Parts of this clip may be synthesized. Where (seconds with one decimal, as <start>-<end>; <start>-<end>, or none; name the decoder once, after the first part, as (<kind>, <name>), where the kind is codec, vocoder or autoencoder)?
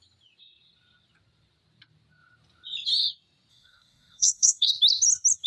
3.5-4.7 (codec, SNAC)